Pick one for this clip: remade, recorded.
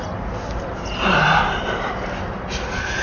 recorded